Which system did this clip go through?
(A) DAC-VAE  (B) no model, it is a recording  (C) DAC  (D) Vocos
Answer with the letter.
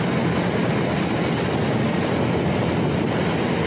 B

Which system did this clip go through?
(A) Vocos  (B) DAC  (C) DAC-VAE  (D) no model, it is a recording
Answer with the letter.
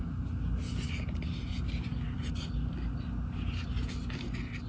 D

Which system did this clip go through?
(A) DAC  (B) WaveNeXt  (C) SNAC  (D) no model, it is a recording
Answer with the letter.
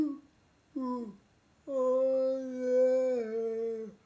D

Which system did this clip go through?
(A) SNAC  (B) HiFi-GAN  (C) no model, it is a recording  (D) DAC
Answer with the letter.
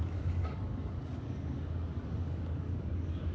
D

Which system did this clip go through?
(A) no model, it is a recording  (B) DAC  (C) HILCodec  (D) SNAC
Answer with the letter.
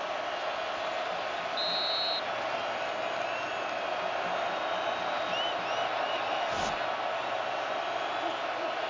A